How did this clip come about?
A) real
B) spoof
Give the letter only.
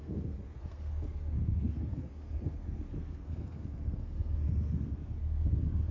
B